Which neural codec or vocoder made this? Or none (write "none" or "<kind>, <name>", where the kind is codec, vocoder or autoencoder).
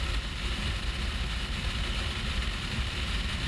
none